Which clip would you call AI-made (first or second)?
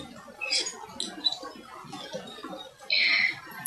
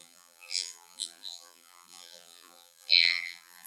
second